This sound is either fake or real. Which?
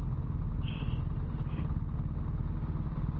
real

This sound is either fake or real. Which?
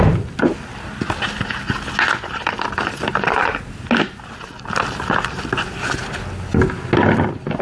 real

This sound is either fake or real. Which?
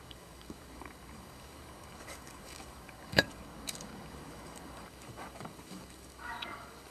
fake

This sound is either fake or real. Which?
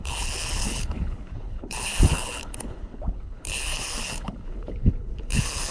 fake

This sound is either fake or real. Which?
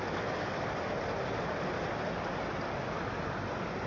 real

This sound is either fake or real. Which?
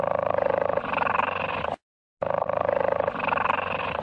real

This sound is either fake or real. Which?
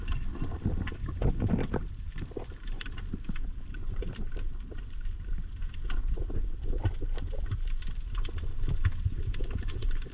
fake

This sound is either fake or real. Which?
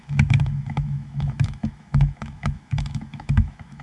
fake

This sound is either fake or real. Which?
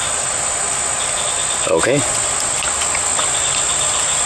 real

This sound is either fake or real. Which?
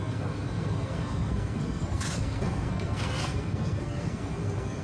fake